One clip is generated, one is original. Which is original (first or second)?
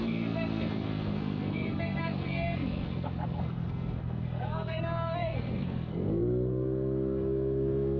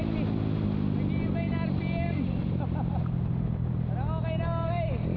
second